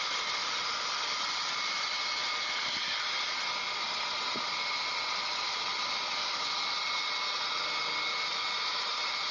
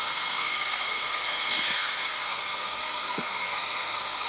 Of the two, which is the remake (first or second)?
second